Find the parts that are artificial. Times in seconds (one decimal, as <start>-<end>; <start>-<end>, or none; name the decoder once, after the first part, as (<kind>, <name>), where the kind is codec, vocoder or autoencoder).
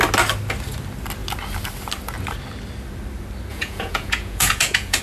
3.5-5.0 (vocoder, Vocos)